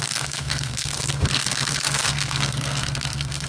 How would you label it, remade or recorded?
remade